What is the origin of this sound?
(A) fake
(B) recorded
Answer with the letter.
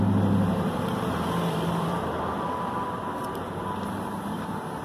A